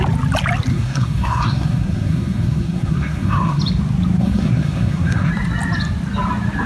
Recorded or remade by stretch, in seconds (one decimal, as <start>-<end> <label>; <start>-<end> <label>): 0.0-0.7 recorded; 0.7-3.6 remade; 3.6-4.2 recorded; 4.2-5.3 remade; 5.3-6.7 recorded